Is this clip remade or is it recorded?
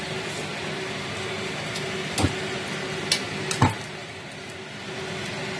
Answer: recorded